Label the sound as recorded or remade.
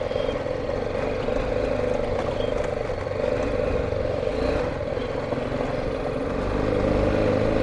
recorded